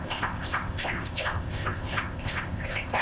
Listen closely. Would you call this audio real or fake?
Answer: fake